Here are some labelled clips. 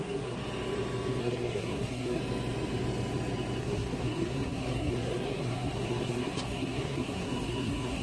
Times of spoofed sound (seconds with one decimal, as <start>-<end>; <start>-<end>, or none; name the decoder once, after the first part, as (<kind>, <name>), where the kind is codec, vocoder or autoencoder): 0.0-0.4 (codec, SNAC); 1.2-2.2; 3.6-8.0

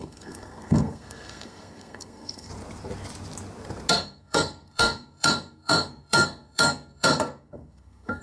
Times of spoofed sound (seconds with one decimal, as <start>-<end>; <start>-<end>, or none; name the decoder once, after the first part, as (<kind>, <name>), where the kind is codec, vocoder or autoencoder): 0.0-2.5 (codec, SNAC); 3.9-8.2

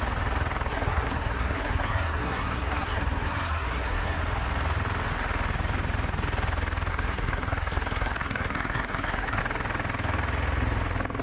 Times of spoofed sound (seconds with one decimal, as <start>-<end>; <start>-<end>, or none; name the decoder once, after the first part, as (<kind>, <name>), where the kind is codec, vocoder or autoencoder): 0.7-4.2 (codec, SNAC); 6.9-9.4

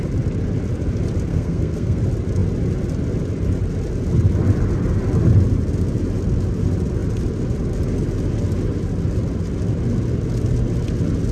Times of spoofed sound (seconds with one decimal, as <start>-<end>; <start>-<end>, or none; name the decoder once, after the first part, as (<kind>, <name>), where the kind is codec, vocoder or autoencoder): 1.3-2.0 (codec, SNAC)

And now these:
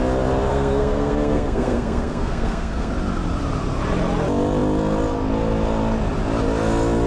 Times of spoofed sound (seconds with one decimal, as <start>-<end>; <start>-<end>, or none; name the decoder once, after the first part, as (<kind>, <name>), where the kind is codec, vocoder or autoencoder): 0.5-2.9 (codec, SNAC)